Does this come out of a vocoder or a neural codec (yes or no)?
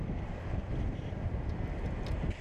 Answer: no